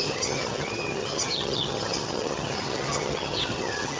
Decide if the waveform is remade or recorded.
remade